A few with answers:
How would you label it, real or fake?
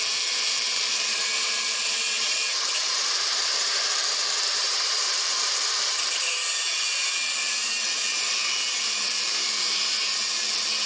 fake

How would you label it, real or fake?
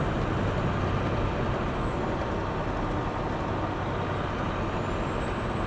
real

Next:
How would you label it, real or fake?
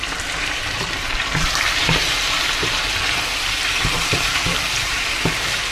fake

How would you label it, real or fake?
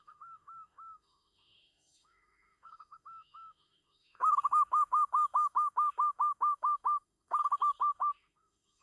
fake